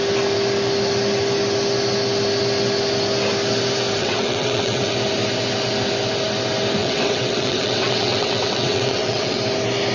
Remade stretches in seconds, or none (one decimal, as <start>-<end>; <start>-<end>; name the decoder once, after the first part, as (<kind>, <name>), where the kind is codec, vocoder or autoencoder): 4.0-4.9 (vocoder, WaveNeXt); 6.8-9.4